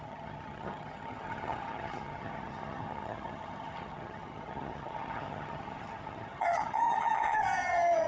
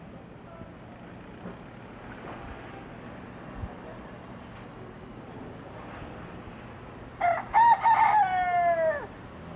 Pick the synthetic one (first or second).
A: first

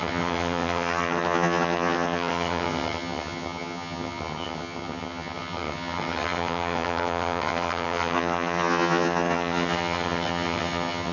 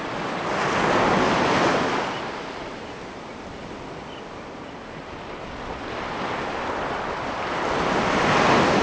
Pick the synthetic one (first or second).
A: first